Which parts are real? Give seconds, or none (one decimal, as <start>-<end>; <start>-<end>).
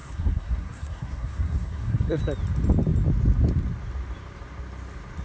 2.2-5.2